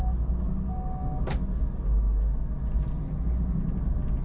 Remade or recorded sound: recorded